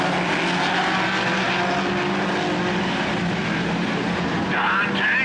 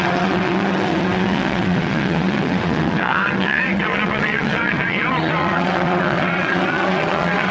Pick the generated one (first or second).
second